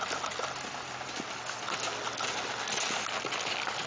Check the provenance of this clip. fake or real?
real